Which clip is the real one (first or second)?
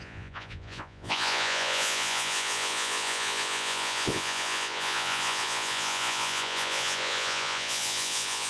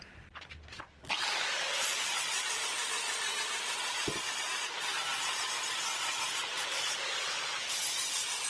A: second